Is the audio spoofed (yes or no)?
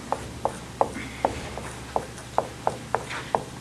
no